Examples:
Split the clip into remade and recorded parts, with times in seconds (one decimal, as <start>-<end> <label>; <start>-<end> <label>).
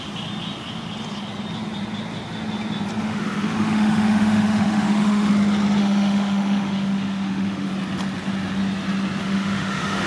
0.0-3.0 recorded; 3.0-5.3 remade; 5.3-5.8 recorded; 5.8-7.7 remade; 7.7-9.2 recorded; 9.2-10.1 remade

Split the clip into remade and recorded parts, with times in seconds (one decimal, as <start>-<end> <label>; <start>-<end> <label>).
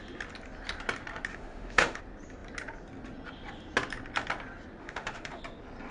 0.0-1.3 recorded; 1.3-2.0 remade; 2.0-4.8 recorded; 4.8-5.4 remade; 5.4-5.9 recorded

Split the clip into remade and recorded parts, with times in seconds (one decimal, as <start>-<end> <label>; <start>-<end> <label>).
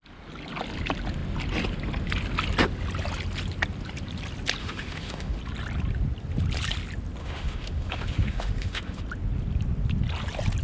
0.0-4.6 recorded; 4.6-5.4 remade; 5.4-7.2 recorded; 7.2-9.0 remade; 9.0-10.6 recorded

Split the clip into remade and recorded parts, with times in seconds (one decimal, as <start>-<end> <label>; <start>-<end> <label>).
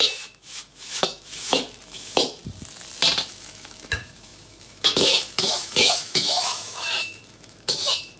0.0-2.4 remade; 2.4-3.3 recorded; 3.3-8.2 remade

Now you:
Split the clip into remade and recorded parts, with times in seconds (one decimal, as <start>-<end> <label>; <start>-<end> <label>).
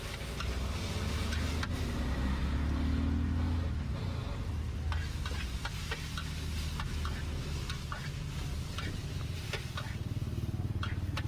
0.0-11.3 recorded